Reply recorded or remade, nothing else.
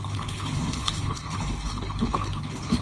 remade